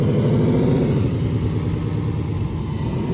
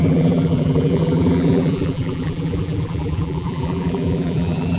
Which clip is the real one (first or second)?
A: first